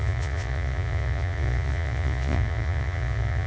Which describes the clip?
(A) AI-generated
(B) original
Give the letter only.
A